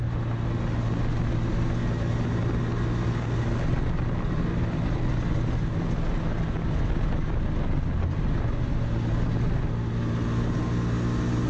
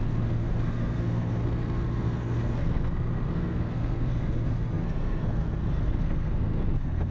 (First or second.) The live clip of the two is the first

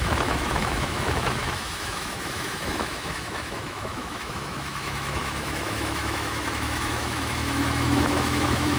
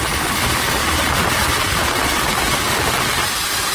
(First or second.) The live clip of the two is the second